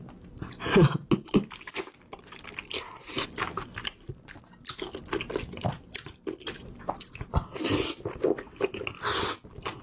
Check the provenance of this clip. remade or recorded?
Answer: recorded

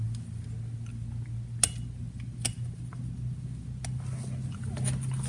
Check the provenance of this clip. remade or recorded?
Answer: recorded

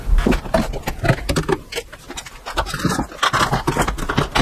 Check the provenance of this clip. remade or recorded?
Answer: recorded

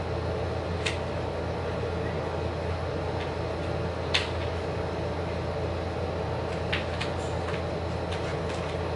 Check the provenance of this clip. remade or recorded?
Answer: recorded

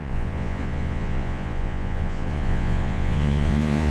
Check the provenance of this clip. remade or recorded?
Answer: remade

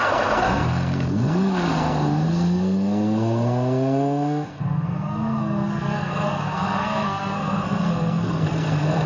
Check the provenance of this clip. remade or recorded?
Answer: remade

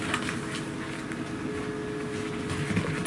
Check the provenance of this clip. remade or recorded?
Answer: recorded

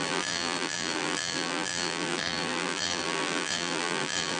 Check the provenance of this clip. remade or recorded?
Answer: remade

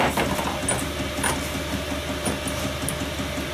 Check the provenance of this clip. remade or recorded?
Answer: recorded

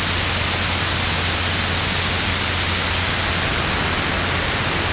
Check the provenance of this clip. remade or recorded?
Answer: recorded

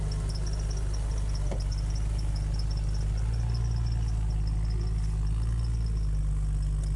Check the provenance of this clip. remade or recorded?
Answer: recorded